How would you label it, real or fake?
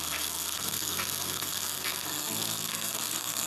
fake